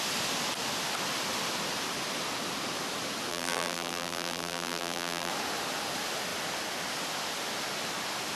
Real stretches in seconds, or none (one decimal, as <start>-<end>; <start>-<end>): 0.0-3.3; 5.3-8.4